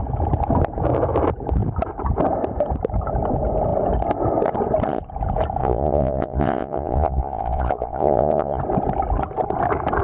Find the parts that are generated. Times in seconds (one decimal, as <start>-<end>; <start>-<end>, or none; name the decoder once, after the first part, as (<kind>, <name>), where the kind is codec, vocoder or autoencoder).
5.6-8.6 (vocoder, Vocos)